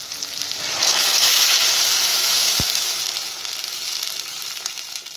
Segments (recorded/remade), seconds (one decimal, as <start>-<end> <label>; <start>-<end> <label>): 0.0-0.8 recorded; 0.8-1.6 remade; 1.6-2.1 recorded; 2.1-3.0 remade; 3.0-5.2 recorded